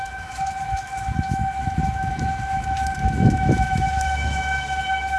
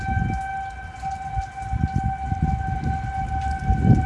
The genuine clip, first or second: second